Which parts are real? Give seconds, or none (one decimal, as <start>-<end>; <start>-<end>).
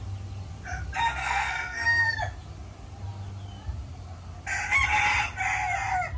0.0-1.2; 2.2-6.2